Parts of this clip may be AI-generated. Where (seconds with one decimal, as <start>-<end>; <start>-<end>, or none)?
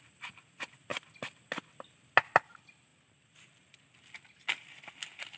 none